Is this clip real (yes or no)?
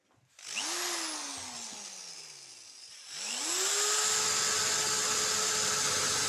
yes